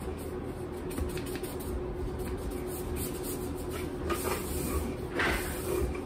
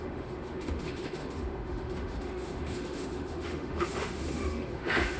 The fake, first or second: second